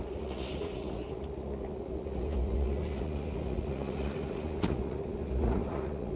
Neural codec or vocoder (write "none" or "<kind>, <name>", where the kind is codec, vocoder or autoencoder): vocoder, Vocos